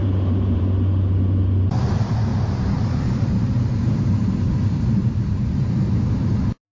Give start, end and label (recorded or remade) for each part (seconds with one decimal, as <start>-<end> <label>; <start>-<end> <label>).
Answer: 0.0-0.6 remade; 0.6-2.3 recorded; 2.3-6.3 remade; 6.3-6.7 recorded